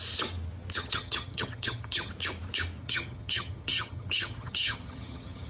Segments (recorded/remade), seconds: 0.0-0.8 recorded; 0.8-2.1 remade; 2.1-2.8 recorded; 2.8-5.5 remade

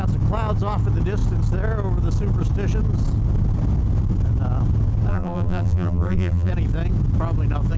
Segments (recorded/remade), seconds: 0.0-5.1 recorded; 5.1-6.5 remade; 6.5-7.8 recorded

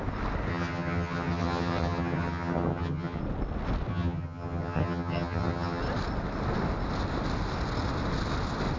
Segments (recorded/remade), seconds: 0.0-0.5 recorded; 0.5-3.2 remade; 3.2-3.9 recorded; 3.9-5.8 remade; 5.8-8.8 recorded

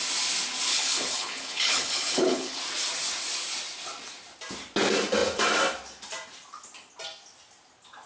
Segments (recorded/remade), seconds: 0.0-0.7 recorded; 0.7-2.6 remade; 2.6-8.1 recorded

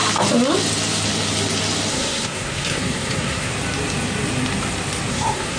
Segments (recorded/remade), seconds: 0.0-1.9 recorded; 1.9-3.5 remade; 3.5-5.1 recorded; 5.1-5.6 remade

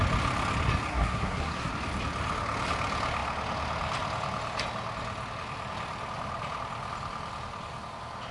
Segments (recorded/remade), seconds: 0.0-0.9 recorded; 0.9-1.7 remade; 1.7-8.3 recorded

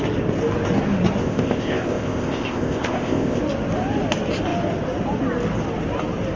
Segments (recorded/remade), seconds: 0.0-1.2 recorded; 1.2-3.4 remade; 3.4-6.4 recorded